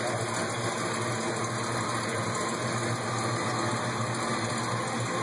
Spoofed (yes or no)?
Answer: no